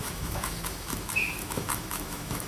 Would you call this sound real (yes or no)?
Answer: no